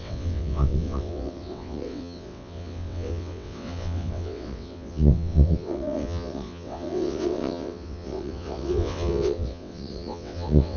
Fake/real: fake